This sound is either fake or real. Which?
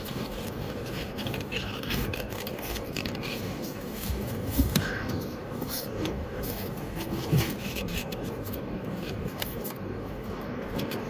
fake